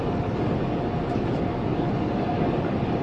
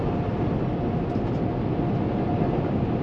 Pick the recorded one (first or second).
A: second